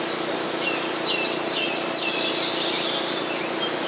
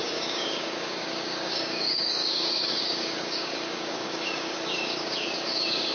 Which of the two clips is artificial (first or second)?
second